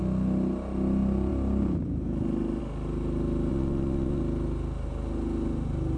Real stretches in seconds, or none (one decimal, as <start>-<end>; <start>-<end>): 0.0-3.5; 4.2-6.0